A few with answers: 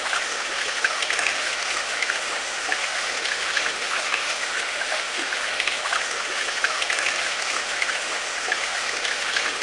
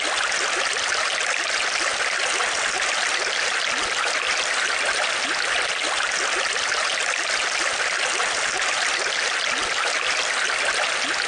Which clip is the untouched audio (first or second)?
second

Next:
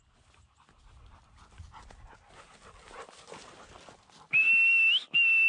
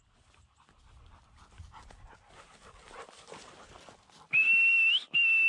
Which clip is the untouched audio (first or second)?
first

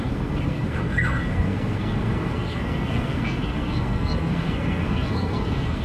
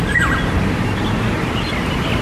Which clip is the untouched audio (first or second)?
second